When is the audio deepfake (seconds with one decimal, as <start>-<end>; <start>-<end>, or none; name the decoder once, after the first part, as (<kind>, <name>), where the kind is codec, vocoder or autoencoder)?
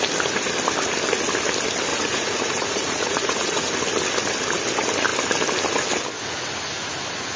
1.9-3.7 (vocoder, Vocos)